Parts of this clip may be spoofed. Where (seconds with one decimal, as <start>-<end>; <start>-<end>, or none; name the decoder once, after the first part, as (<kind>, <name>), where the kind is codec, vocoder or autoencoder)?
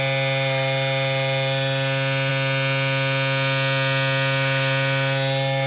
none